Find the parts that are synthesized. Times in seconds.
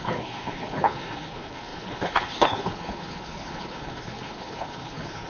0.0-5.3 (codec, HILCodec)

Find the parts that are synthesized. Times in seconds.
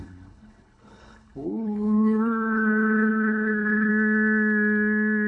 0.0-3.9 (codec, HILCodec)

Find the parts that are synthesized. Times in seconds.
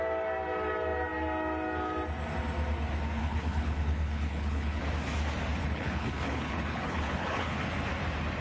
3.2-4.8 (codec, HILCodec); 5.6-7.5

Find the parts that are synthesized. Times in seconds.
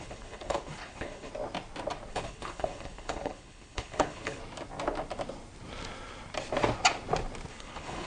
0.0-1.3 (codec, HILCodec); 2.1-4.4; 7.5-8.1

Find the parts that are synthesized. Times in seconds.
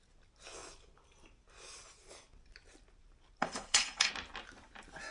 3.4-4.1 (codec, HILCodec)